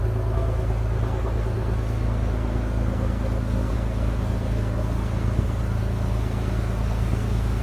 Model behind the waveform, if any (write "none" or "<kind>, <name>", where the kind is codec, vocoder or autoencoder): codec, SNAC